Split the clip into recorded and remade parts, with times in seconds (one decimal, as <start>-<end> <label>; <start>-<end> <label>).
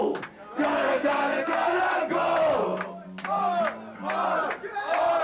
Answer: 0.0-0.7 recorded; 0.7-1.8 remade; 1.8-5.2 recorded